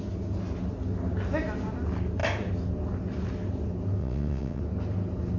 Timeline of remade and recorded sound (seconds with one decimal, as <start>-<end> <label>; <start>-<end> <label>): 0.0-4.0 recorded; 4.0-4.6 remade; 4.6-5.4 recorded